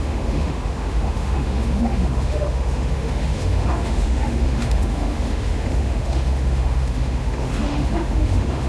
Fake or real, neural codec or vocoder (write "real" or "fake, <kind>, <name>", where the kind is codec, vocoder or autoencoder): fake, autoencoder, DAC-VAE